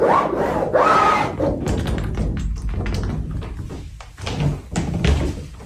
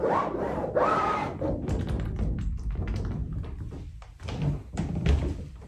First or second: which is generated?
second